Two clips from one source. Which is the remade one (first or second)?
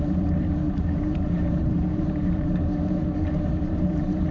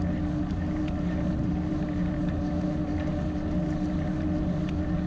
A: first